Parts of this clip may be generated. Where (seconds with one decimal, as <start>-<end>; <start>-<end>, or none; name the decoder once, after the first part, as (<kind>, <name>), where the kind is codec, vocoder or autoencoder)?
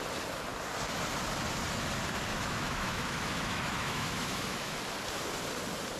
2.3-4.8 (autoencoder, DAC-VAE)